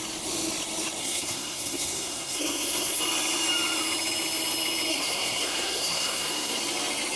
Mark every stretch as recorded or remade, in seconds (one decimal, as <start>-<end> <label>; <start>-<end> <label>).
0.0-1.0 recorded; 1.0-3.0 remade; 3.0-4.9 recorded; 4.9-6.6 remade; 6.6-7.2 recorded

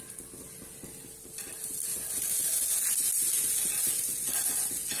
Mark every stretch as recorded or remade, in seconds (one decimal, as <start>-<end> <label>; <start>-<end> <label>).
0.0-5.0 recorded

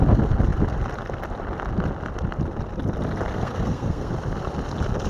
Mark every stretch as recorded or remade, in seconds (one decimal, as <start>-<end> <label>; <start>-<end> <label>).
0.0-3.3 recorded; 3.3-4.1 remade; 4.1-5.1 recorded

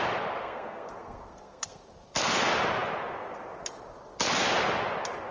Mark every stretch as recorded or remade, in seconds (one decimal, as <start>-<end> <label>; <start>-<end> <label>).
0.0-0.4 recorded; 0.4-1.8 remade; 1.8-5.3 recorded

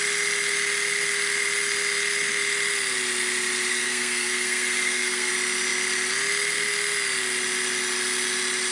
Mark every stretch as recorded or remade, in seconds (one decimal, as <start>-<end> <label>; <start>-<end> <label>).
0.0-3.7 recorded; 3.7-5.3 remade; 5.3-8.7 recorded

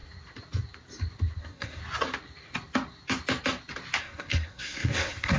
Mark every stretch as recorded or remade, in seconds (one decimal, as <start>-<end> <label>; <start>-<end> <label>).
0.0-1.4 recorded; 1.4-1.8 remade; 1.8-4.0 recorded; 4.0-5.4 remade

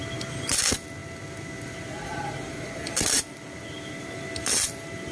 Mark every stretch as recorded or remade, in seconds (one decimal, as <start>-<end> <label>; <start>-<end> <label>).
0.0-5.1 recorded

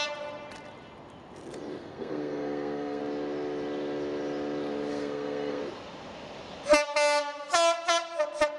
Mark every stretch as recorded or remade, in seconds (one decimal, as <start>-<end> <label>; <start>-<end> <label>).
0.0-1.8 recorded; 1.8-3.0 remade; 3.0-4.9 recorded; 4.9-5.6 remade; 5.6-8.6 recorded